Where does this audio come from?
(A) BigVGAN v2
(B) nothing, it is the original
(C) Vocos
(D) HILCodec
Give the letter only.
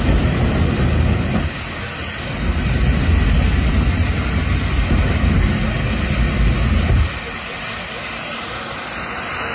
B